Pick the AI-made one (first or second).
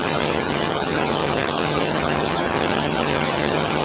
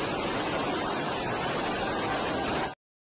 first